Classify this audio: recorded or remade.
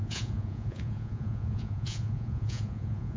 remade